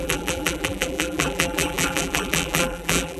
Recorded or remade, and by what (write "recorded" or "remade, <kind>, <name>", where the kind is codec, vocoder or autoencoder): remade, vocoder, BigVGAN v2